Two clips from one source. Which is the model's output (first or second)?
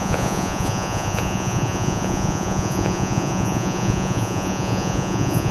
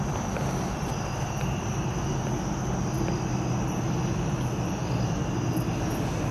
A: first